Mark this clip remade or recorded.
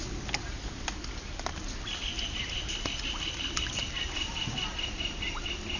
recorded